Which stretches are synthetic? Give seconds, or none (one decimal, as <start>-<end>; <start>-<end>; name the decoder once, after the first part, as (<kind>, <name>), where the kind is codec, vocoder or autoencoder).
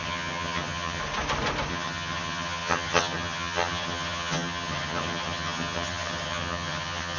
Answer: 0.0-1.0 (vocoder, HiFi-GAN); 1.7-7.2